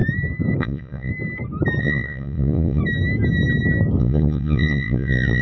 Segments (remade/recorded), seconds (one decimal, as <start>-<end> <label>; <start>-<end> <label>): 0.0-0.6 recorded; 0.6-1.1 remade; 1.1-1.8 recorded; 1.8-2.8 remade; 2.8-4.0 recorded; 4.0-5.4 remade